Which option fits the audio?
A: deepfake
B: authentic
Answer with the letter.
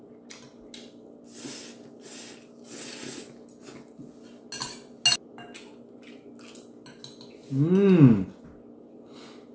B